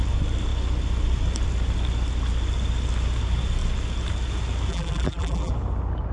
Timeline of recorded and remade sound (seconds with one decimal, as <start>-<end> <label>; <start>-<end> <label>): 0.0-4.7 recorded; 4.7-5.5 remade; 5.5-6.1 recorded